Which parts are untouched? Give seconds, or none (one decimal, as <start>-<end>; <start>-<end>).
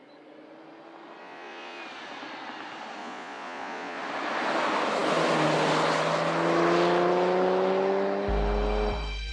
0.0-1.2; 1.8-3.0; 4.0-9.3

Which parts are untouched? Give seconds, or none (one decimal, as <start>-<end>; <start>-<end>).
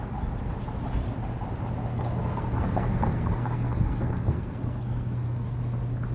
0.0-1.9; 5.6-6.1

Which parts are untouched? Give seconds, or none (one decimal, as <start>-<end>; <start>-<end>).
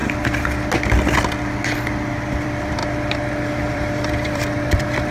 0.0-2.3; 2.8-3.7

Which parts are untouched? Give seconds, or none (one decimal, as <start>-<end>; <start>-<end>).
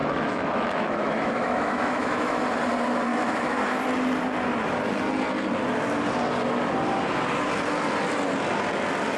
2.4-3.1; 3.6-9.2